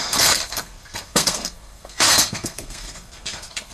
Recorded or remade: remade